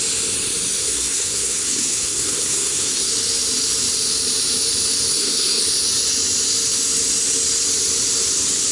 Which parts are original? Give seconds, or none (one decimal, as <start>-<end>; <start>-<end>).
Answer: 0.0-0.8; 3.1-5.1; 5.6-8.7